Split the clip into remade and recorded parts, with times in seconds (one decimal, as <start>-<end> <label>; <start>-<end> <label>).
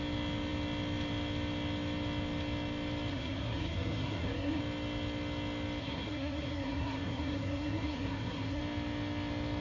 0.0-3.1 recorded; 3.1-4.6 remade; 4.6-5.8 recorded; 5.8-8.6 remade; 8.6-9.6 recorded